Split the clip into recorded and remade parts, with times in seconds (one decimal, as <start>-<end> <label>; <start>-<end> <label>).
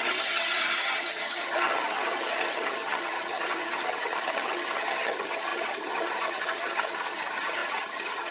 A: 0.0-8.3 remade